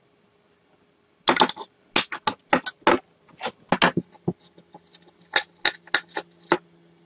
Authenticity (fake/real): real